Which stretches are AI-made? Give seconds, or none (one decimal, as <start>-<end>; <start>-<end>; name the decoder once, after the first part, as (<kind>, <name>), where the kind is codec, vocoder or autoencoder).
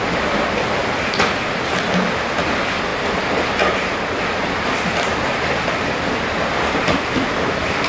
none